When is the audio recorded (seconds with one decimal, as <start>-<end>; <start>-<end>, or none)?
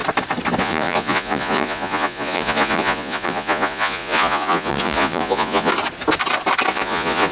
0.0-0.6; 5.7-6.7